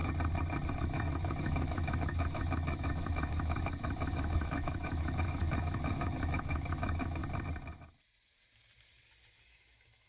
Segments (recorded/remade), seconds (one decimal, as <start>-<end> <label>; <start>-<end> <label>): 0.0-0.7 recorded; 0.7-7.2 remade; 7.2-9.4 recorded; 9.4-10.1 remade